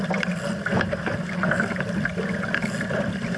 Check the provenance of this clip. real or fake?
real